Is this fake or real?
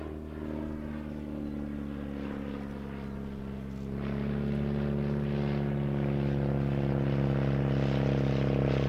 real